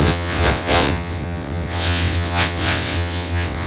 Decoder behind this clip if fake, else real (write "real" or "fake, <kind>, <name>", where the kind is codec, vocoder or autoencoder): fake, vocoder, WaveNeXt